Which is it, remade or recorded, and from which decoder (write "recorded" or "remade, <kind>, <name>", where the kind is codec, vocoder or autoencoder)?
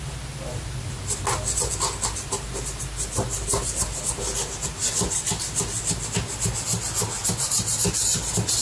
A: recorded